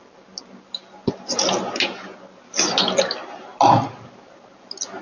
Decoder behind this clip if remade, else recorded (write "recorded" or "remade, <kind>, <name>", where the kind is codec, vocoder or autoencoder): recorded